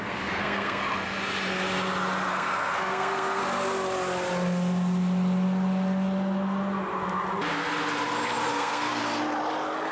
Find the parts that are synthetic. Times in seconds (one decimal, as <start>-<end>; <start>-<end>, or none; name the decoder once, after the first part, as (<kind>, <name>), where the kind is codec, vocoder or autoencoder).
0.0-0.8 (codec, SNAC); 2.3-3.4; 8.5-9.0